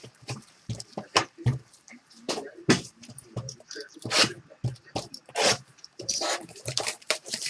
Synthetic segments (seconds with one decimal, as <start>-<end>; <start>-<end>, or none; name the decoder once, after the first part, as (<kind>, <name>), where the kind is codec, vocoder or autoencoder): 0.0-7.5 (vocoder, BigVGAN v2)